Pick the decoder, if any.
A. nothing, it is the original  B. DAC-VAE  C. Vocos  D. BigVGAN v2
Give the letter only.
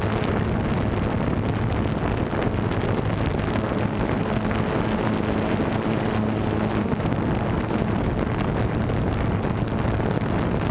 A